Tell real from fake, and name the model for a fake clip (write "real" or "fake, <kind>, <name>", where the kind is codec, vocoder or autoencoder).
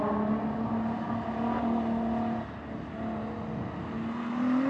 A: real